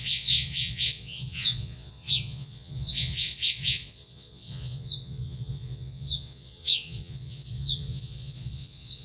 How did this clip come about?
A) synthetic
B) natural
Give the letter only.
A